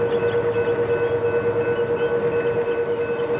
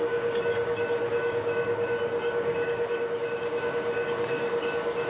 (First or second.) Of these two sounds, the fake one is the second